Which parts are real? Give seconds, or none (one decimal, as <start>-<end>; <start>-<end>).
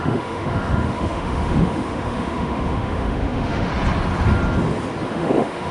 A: 3.7-5.1